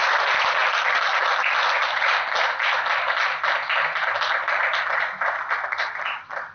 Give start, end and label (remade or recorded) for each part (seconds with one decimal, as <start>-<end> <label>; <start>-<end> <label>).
0.0-6.5 recorded